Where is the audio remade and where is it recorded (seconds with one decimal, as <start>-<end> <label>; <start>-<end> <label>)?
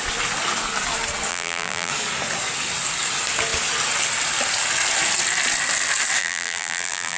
0.0-1.3 recorded; 1.3-1.9 remade; 1.9-6.2 recorded; 6.2-7.2 remade